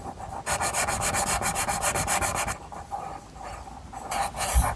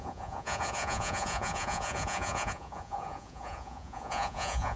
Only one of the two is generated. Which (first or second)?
second